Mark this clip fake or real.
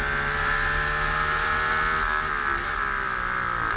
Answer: real